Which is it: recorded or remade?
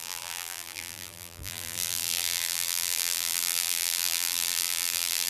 remade